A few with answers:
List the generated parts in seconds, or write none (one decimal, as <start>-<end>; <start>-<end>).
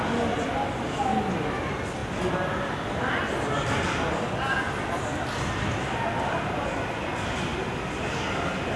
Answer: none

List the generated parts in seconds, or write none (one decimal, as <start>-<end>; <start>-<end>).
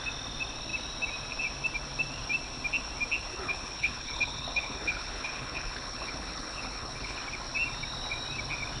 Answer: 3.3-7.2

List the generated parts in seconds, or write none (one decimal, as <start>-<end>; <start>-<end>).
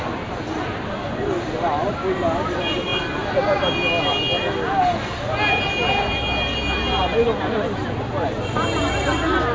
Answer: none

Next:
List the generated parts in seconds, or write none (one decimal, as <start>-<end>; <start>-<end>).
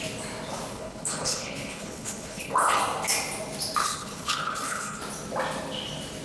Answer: 0.7-2.8; 3.8-5.0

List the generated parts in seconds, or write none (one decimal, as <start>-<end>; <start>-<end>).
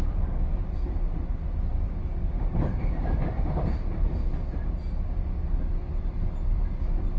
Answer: none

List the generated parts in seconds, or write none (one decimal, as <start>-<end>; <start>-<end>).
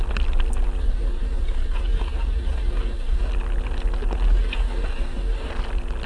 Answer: 0.8-3.3; 4.3-5.5